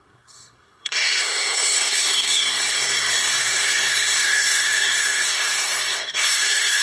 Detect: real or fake fake